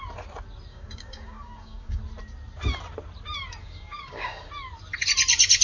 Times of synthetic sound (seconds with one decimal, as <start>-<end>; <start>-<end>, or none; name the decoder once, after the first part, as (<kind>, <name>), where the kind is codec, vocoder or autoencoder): 0.7-2.0 (codec, DAC); 3.6-4.5